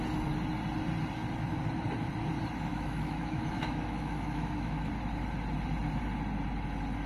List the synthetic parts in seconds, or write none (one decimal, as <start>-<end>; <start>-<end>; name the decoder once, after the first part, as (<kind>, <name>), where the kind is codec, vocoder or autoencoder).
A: 2.7-4.9 (autoencoder, DAC-VAE)

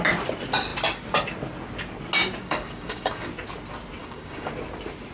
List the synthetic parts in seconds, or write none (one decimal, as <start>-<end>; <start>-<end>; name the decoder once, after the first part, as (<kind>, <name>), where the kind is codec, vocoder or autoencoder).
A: 2.4-3.3 (codec, DAC); 4.0-4.5

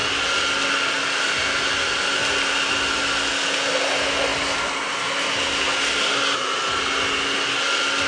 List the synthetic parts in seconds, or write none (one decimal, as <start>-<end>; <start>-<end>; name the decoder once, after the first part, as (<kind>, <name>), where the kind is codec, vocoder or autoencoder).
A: none

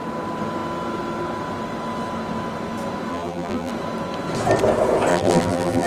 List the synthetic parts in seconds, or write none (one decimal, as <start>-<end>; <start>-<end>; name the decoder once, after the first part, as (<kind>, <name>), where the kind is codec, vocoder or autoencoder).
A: 3.1-3.7 (vocoder, BigVGAN v2); 5.1-5.9